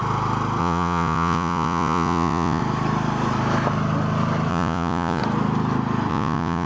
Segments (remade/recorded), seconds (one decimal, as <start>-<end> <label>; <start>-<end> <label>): 0.0-0.6 recorded; 0.6-2.6 remade; 2.6-4.5 recorded; 4.5-5.2 remade; 5.2-6.1 recorded; 6.1-6.7 remade